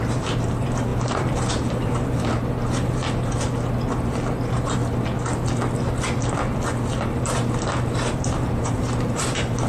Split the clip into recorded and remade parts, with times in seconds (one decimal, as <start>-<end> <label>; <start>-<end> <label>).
0.0-3.0 remade; 3.0-7.2 recorded; 7.2-9.7 remade